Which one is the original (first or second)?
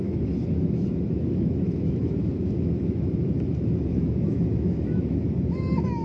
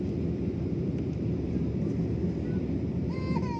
second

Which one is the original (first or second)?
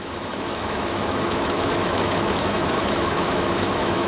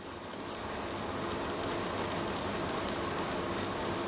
second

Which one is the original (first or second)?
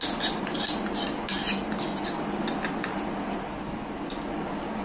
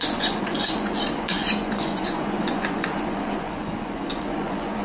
first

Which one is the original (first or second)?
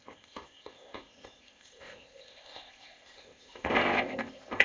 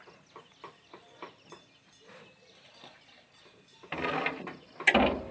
second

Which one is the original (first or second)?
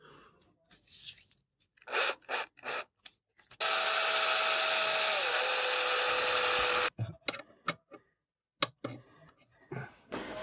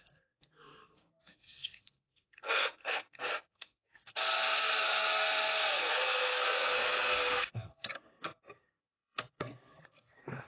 first